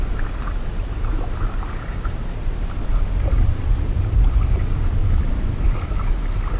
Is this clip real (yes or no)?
yes